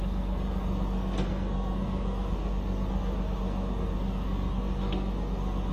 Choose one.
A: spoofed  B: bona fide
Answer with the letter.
A